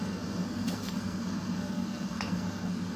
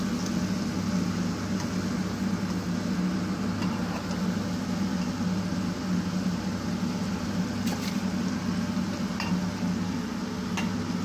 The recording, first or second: second